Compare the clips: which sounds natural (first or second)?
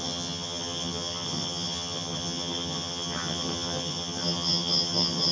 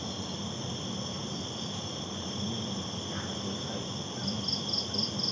second